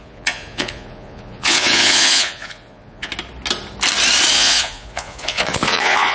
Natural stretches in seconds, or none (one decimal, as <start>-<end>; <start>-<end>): 3.1-4.3